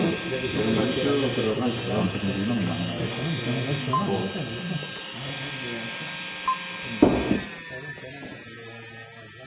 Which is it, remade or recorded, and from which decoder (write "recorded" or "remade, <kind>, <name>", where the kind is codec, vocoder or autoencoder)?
recorded